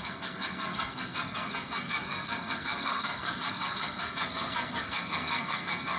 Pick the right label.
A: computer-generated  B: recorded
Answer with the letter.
A